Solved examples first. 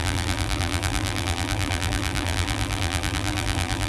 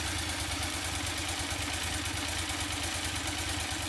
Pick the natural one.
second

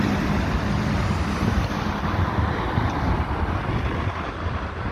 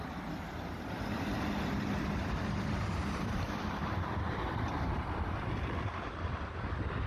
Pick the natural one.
first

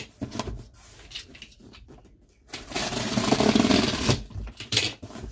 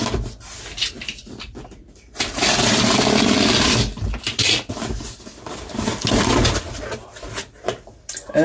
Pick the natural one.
second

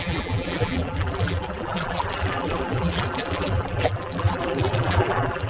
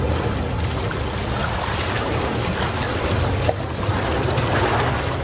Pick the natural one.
second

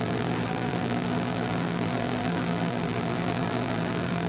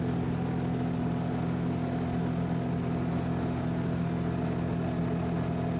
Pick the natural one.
second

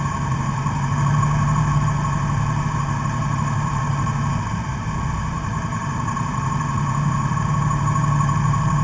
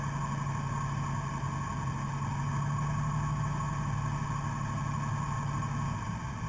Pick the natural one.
second